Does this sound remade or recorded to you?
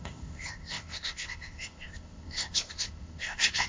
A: remade